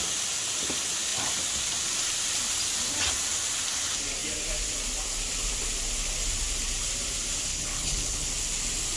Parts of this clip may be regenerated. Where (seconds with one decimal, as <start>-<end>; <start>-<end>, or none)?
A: 7.5-8.3